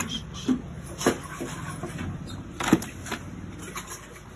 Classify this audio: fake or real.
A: real